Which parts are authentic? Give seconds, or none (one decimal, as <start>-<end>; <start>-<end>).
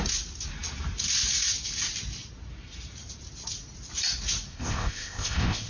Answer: 0.0-4.5